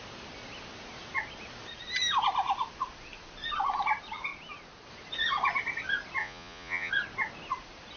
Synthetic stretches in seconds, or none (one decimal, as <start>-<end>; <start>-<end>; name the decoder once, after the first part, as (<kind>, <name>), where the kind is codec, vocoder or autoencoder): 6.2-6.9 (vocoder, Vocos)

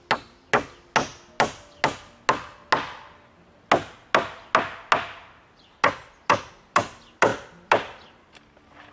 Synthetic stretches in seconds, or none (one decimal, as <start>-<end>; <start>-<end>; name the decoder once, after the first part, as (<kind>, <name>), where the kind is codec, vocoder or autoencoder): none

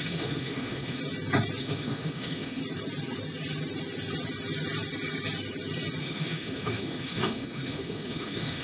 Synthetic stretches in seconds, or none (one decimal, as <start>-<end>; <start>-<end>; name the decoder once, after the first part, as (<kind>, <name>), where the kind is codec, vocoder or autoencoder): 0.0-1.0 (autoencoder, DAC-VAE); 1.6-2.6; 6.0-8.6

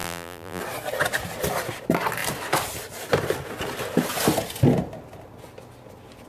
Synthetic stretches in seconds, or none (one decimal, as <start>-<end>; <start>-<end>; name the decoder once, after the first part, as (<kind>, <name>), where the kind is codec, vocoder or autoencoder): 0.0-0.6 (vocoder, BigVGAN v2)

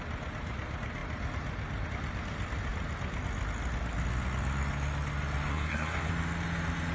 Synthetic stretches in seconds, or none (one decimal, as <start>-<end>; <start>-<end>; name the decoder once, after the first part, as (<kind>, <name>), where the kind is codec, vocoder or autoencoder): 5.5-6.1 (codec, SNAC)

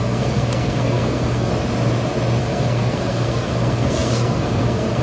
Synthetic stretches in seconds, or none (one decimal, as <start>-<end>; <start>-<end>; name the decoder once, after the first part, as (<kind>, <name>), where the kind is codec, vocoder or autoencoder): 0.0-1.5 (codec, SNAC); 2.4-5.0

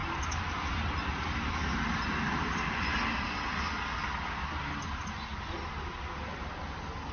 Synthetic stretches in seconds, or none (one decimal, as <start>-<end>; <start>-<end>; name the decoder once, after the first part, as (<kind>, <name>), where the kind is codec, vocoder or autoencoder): none